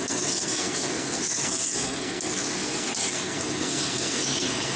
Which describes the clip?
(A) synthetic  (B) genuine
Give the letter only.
A